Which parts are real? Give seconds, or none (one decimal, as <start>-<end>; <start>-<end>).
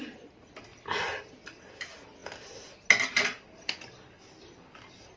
0.0-5.2